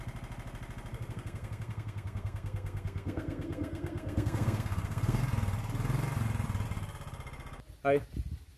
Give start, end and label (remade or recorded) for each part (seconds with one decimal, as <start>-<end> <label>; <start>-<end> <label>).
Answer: 0.0-0.9 recorded; 0.9-5.2 remade; 5.2-8.6 recorded